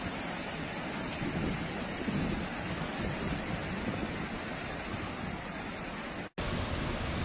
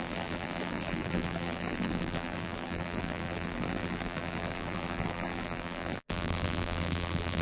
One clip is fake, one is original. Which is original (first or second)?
first